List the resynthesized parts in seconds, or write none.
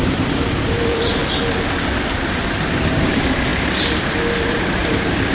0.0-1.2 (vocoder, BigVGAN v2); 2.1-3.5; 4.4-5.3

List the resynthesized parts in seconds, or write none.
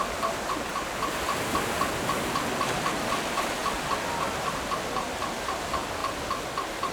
none